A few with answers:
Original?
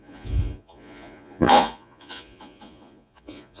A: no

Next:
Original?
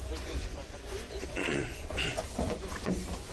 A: no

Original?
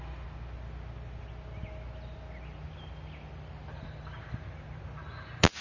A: yes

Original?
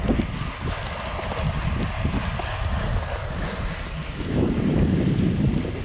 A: yes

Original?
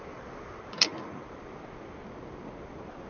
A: yes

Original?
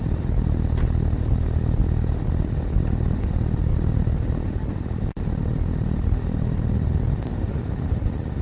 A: yes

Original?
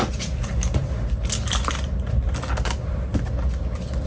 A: yes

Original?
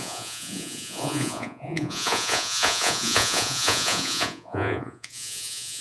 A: no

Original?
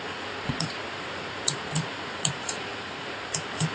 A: no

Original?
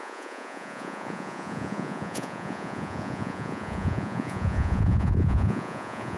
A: no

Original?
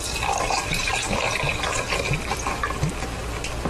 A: yes